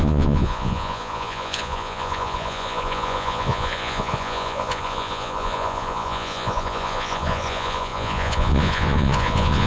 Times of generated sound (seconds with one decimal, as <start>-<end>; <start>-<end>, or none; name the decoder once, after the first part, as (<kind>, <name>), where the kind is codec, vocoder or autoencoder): 0.0-9.7 (vocoder, Vocos)